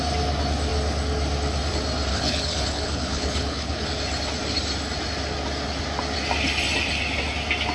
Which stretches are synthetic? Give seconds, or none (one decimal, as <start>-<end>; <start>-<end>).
2.1-3.9